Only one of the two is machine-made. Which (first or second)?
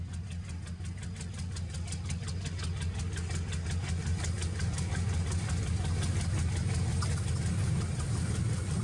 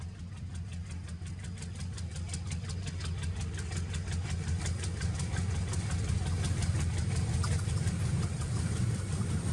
second